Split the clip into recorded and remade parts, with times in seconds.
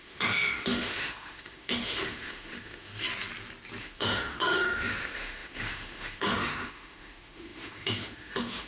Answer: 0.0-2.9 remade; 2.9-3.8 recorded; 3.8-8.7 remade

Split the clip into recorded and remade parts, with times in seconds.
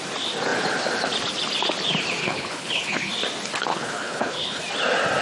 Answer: 0.0-2.2 recorded; 2.2-3.1 remade; 3.1-3.7 recorded; 3.7-4.6 remade; 4.6-5.2 recorded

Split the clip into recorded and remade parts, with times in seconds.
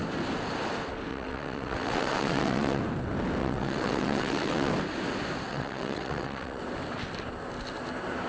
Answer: 0.0-1.1 recorded; 1.1-2.8 remade; 2.8-3.4 recorded; 3.4-4.7 remade; 4.7-5.5 recorded; 5.5-6.6 remade; 6.6-8.3 recorded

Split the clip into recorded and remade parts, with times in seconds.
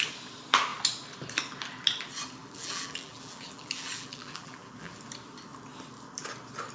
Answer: 0.0-2.4 recorded; 2.4-5.0 remade; 5.0-6.7 recorded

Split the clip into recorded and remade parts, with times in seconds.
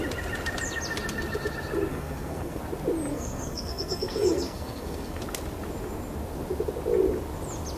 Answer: 0.0-1.9 recorded; 1.9-2.6 remade; 2.6-3.1 recorded; 3.1-5.2 remade; 5.2-7.8 recorded